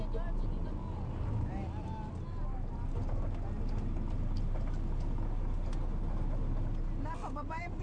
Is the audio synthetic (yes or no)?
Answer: no